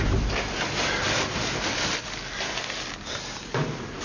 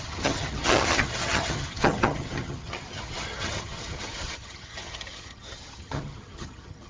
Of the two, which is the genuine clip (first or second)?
first